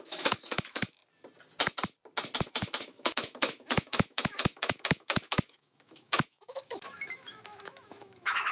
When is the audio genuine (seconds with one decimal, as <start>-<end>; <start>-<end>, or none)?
1.0-2.5